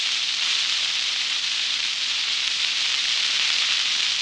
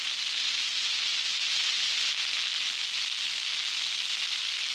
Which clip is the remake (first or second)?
first